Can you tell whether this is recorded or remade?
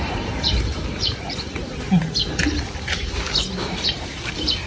remade